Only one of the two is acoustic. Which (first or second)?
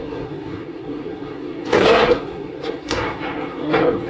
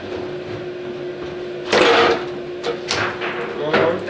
second